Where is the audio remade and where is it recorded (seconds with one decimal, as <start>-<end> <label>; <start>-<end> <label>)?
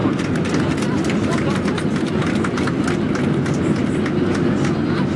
0.0-5.2 recorded